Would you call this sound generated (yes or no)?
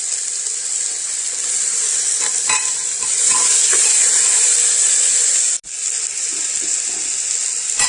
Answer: no